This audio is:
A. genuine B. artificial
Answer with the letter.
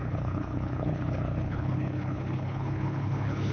B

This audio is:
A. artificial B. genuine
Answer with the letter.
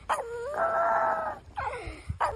B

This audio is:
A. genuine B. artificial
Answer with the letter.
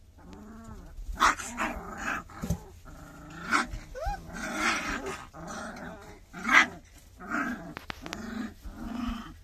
A